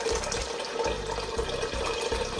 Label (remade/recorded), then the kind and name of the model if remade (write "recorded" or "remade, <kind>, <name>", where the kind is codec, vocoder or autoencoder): recorded